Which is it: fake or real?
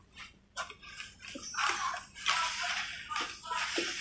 real